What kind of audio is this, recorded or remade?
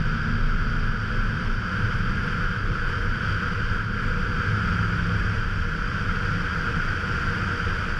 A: recorded